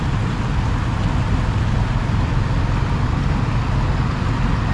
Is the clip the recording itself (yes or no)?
yes